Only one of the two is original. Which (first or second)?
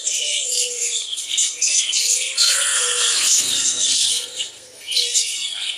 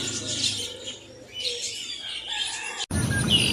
second